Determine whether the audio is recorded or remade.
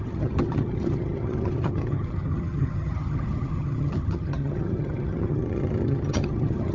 remade